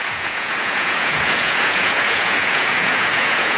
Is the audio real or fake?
fake